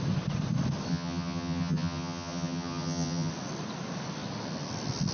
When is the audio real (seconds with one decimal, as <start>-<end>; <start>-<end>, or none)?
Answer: 0.0-0.9; 3.3-5.1

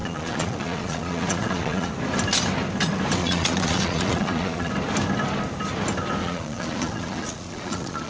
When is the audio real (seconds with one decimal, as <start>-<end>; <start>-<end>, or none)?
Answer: 1.9-3.2; 4.7-6.2

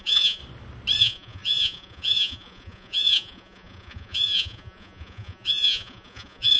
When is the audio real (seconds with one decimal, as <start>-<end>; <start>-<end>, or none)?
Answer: 0.4-1.0

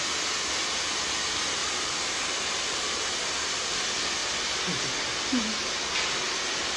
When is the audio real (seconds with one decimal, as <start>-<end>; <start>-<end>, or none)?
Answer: 0.0-1.6; 3.3-6.8

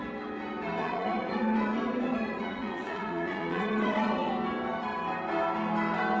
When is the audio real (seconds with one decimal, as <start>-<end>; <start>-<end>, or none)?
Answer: 0.0-0.8; 4.3-6.2

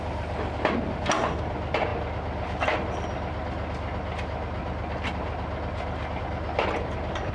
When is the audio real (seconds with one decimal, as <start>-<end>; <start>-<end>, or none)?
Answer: 0.0-7.3

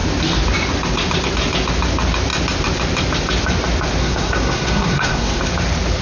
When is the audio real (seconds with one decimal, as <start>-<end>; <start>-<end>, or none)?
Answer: 0.0-4.0; 5.4-6.0